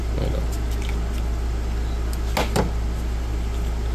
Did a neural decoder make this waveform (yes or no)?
no